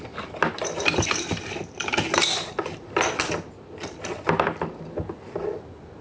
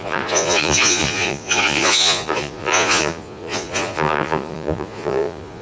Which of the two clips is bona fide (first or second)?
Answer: first